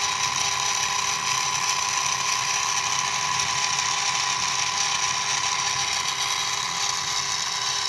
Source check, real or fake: real